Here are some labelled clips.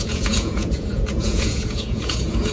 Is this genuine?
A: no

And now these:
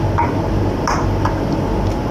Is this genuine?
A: yes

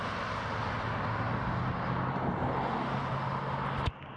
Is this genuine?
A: yes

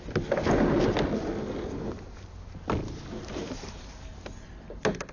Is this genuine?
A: yes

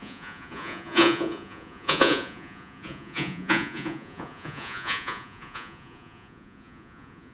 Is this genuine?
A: no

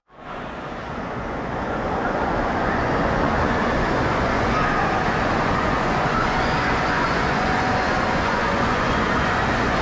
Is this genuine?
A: no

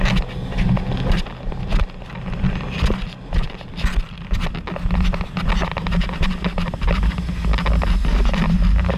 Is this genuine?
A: yes